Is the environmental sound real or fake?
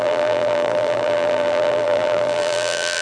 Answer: fake